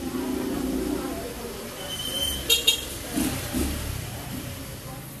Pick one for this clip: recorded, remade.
recorded